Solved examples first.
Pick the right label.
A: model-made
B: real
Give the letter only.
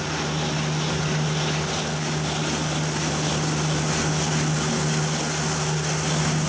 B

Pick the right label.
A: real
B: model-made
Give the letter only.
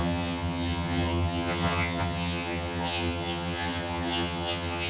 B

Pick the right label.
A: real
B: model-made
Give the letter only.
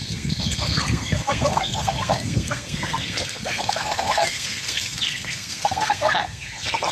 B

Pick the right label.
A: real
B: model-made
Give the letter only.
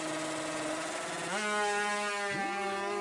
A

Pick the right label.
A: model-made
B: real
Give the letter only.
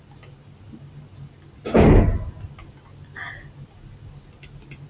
B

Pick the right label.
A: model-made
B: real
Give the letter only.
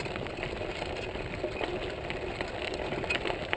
B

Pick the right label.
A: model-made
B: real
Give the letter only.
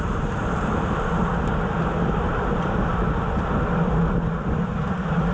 B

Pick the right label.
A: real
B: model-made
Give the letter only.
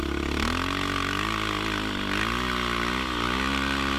A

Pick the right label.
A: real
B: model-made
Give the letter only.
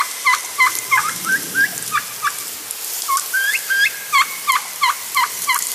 A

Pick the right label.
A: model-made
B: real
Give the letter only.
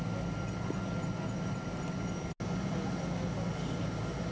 B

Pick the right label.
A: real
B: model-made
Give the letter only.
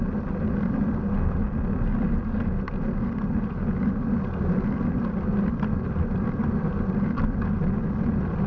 A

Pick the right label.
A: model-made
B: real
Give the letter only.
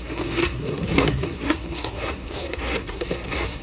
A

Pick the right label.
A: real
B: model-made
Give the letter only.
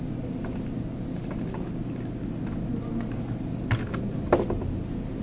A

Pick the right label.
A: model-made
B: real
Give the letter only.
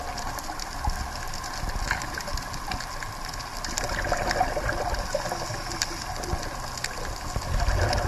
B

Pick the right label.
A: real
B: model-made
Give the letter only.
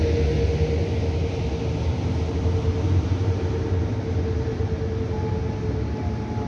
A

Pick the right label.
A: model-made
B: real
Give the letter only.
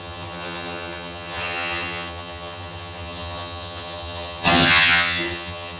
A